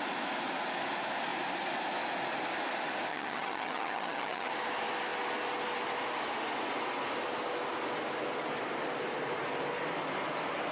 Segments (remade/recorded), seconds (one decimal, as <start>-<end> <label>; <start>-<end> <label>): 0.0-3.1 recorded; 3.1-4.5 remade; 4.5-10.7 recorded